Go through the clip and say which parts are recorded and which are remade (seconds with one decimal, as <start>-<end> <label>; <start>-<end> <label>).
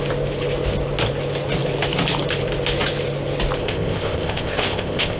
0.0-3.6 recorded; 3.6-5.2 remade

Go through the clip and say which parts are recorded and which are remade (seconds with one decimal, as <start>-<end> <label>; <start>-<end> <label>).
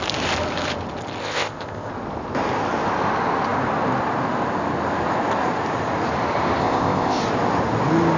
0.0-1.2 recorded; 1.2-1.9 remade; 1.9-6.6 recorded; 6.6-7.2 remade; 7.2-8.2 recorded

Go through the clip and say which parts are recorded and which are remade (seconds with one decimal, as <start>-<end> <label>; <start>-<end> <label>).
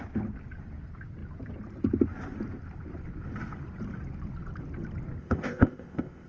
0.0-5.2 recorded; 5.2-6.3 remade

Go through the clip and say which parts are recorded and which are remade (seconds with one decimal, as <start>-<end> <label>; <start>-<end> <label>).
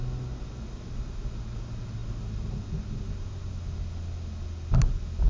0.0-5.3 recorded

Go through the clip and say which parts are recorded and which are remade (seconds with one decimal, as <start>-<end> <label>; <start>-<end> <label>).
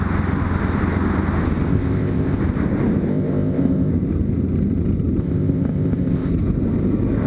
0.0-1.7 recorded; 1.7-2.4 remade; 2.4-3.1 recorded; 3.1-3.9 remade; 3.9-5.2 recorded; 5.2-6.3 remade; 6.3-7.3 recorded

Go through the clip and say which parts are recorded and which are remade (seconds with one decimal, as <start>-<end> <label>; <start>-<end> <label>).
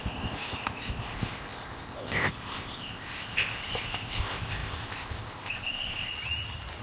0.0-6.1 remade; 6.1-6.8 recorded